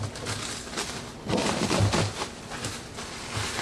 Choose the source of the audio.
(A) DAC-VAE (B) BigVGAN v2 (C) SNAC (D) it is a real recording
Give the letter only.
D